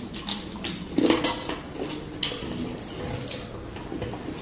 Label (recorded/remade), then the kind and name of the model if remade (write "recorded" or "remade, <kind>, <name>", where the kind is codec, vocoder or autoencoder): recorded